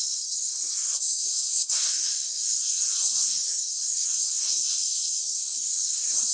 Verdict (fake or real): fake